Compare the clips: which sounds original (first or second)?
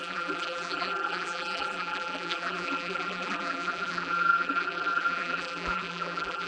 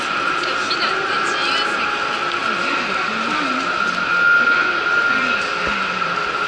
second